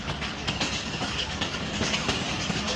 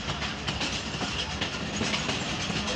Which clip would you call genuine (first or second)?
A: second